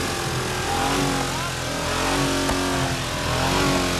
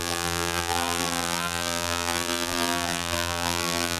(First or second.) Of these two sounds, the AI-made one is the second